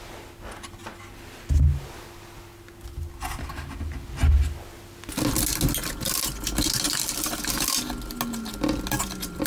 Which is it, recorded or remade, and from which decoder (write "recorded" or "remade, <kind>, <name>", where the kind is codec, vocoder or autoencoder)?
recorded